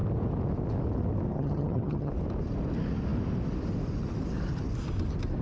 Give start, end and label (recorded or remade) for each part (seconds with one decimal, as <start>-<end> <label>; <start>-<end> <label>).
0.0-1.3 recorded; 1.3-2.1 remade; 2.1-5.4 recorded